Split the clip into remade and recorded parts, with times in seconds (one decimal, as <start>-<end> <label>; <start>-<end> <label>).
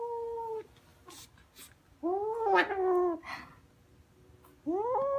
0.0-5.2 recorded